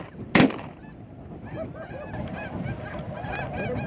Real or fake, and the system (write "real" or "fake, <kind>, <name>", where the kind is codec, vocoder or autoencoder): real